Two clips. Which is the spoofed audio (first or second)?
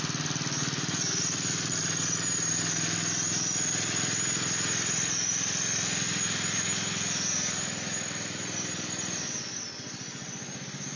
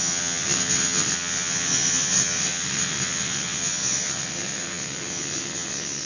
second